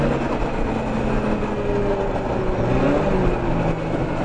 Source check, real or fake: real